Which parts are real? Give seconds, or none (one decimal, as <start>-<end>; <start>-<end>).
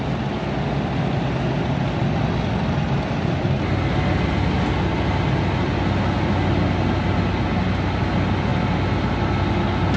0.0-10.0